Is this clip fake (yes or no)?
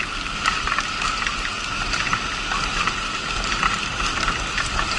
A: no